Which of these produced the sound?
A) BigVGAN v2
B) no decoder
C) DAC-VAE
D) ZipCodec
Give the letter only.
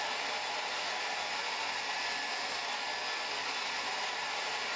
B